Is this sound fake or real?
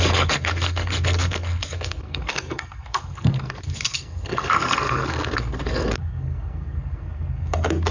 fake